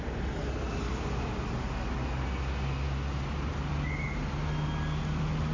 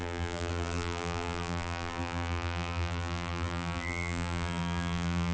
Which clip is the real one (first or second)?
first